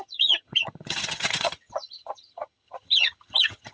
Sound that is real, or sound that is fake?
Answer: fake